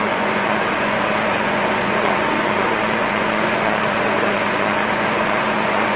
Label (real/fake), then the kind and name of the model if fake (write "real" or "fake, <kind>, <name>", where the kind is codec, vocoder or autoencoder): fake, vocoder, Vocos